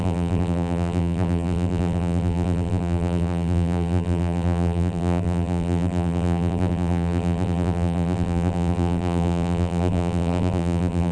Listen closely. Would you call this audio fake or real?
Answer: fake